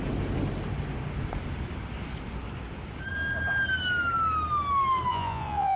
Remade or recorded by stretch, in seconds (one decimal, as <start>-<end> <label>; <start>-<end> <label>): 0.0-5.1 recorded; 5.1-5.8 remade

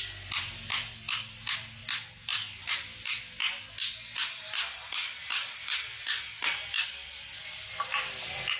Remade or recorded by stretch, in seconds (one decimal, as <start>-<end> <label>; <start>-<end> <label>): 0.0-8.6 recorded